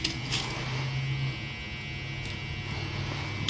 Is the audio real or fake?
real